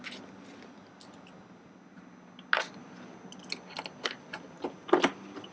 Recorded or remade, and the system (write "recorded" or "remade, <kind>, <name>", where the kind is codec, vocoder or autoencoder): recorded